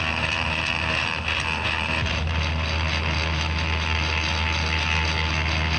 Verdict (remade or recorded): recorded